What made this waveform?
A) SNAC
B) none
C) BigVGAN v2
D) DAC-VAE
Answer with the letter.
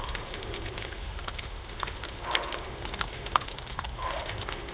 D